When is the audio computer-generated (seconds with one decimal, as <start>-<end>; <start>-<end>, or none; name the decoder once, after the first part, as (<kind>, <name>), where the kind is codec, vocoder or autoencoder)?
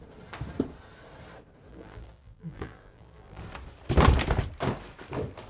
1.7-3.4 (vocoder, BigVGAN v2)